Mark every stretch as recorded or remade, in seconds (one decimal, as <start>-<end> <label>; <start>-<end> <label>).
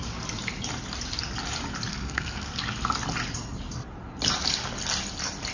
0.0-1.9 recorded; 1.9-2.6 remade; 2.6-5.5 recorded